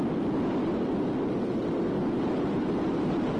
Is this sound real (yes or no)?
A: yes